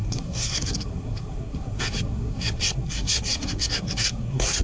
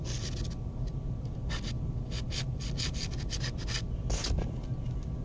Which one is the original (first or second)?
second